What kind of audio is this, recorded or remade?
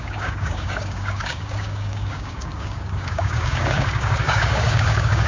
remade